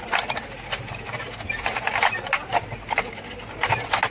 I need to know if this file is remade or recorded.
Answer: recorded